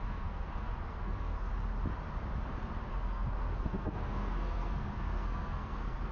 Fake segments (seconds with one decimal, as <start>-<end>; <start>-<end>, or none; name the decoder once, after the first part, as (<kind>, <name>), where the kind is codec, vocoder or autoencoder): 0.0-1.5 (codec, SNAC); 2.9-6.1